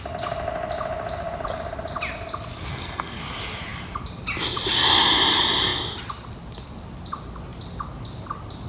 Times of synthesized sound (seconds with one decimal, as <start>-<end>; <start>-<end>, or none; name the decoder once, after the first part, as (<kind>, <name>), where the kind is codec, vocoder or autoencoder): 2.7-3.2 (codec, SNAC)